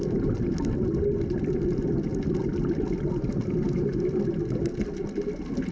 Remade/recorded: recorded